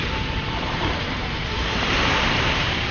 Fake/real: fake